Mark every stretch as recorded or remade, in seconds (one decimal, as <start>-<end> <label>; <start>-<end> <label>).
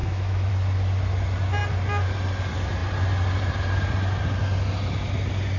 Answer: 0.0-0.5 remade; 0.5-5.6 recorded